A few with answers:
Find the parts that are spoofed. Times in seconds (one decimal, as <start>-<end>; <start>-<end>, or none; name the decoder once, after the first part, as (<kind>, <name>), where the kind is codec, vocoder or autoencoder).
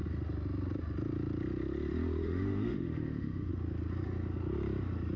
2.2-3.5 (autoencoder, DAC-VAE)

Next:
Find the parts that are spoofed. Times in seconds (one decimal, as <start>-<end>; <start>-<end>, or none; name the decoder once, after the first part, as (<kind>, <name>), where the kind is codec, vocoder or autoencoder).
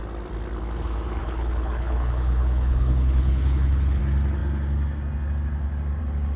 1.2-4.0 (codec, HILCodec)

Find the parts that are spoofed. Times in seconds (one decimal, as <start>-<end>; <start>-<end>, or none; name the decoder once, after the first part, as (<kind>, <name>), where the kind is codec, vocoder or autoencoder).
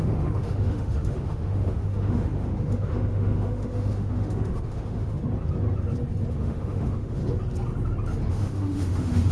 0.0-5.2 (autoencoder, DAC-VAE); 6.3-7.2; 8.3-9.3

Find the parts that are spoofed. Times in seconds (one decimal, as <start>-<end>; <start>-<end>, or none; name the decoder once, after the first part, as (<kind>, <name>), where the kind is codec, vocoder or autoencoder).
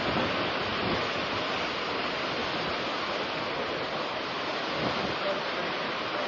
none